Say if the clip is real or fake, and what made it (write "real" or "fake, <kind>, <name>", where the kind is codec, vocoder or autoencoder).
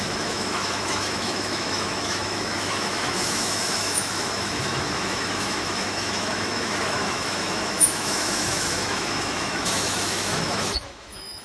fake, autoencoder, DAC-VAE